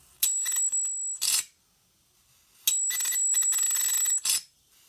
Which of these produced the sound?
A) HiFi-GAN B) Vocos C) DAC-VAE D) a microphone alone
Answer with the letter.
D